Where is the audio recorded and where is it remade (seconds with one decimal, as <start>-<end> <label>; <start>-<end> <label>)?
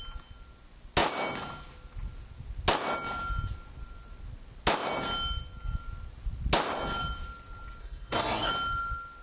0.0-7.8 recorded; 7.8-8.5 remade; 8.5-9.2 recorded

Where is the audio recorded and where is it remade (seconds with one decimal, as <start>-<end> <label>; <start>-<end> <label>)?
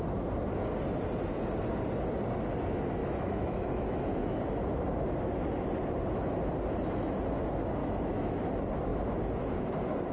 0.0-3.0 recorded; 3.0-4.4 remade; 4.4-7.8 recorded; 7.8-8.5 remade; 8.5-10.1 recorded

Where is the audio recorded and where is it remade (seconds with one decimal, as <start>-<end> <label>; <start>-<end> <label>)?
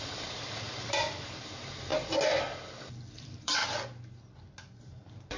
0.0-1.9 remade; 1.9-3.2 recorded; 3.2-3.6 remade; 3.6-4.8 recorded; 4.8-5.4 remade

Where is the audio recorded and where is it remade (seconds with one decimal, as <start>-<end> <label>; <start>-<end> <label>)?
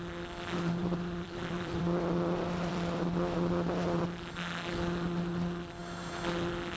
0.0-0.8 recorded; 0.8-4.0 remade; 4.0-6.8 recorded